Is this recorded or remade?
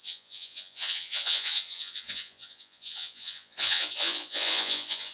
remade